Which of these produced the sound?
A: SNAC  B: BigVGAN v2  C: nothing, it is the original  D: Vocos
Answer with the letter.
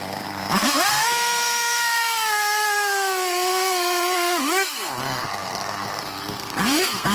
A